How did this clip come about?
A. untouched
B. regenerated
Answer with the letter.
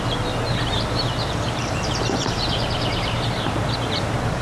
B